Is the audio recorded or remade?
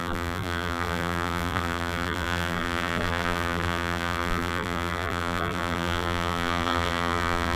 remade